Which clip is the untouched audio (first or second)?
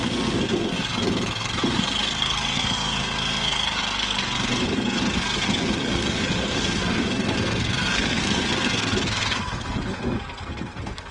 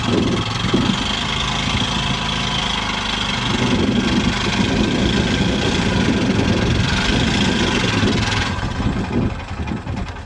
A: second